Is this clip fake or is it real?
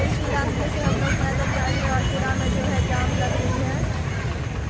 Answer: fake